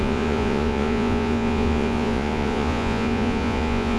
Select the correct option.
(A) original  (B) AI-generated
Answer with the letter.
B